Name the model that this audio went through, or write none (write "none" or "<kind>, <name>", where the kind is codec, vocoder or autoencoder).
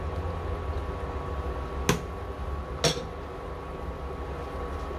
none